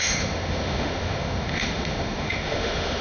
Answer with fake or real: fake